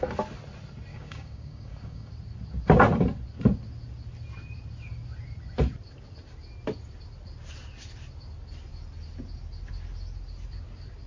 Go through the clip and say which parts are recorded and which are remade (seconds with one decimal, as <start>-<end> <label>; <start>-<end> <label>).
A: 0.0-0.9 recorded; 0.9-2.1 remade; 2.1-11.1 recorded